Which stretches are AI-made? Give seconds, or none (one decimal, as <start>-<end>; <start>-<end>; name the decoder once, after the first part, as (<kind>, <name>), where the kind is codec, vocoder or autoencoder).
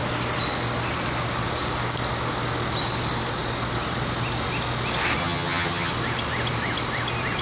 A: 5.2-5.9 (vocoder, HiFi-GAN)